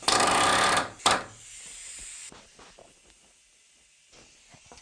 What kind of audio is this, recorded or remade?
recorded